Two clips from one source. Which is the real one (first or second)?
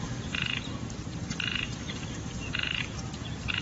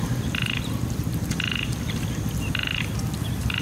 second